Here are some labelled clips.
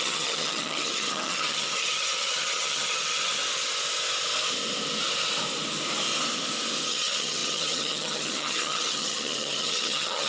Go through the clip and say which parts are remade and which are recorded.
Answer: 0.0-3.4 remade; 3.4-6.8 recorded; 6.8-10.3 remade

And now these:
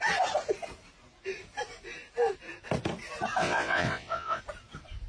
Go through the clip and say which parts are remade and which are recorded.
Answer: 0.0-3.4 recorded; 3.4-4.4 remade; 4.4-5.1 recorded

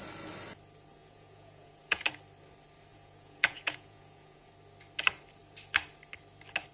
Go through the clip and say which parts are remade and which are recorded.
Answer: 0.0-1.0 recorded; 1.0-2.0 remade; 2.0-2.9 recorded; 2.9-4.5 remade; 4.5-6.7 recorded

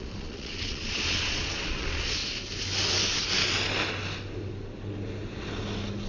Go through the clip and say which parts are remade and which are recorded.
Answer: 0.0-2.2 remade; 2.2-6.1 recorded

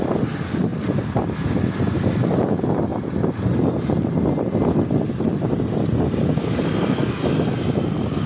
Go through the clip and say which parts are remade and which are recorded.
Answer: 0.0-8.3 recorded

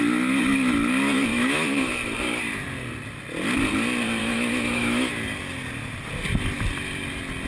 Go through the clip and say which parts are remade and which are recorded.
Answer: 0.0-1.3 recorded; 1.3-1.9 remade; 1.9-4.2 recorded; 4.2-5.1 remade; 5.1-7.5 recorded

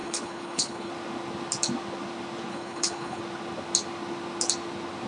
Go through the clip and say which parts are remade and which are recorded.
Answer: 0.0-0.9 remade; 0.9-2.5 recorded; 2.5-3.2 remade; 3.2-5.1 recorded

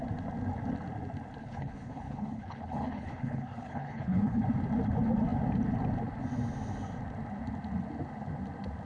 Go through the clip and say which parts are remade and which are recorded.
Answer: 0.0-1.4 recorded; 1.4-4.4 remade; 4.4-8.9 recorded